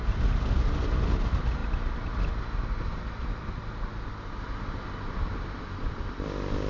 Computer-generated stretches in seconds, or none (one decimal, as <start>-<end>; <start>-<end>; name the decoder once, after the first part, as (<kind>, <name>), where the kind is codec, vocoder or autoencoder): none